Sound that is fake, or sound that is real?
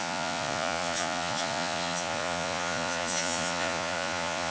fake